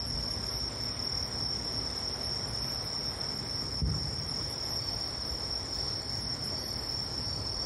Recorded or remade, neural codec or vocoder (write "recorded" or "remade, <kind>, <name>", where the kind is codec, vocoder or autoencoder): recorded